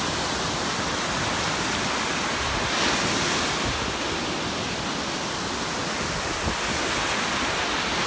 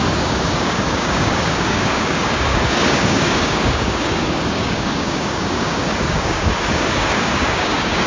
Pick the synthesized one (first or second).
second